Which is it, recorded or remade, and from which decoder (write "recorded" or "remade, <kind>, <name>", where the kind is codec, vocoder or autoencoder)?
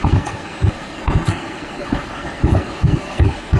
remade, codec, SNAC